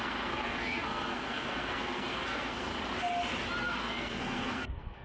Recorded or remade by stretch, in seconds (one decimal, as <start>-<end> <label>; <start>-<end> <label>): 0.0-2.7 remade; 2.7-3.6 recorded; 3.6-5.0 remade